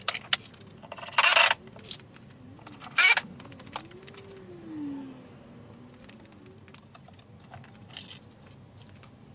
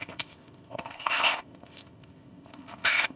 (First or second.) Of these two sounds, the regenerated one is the second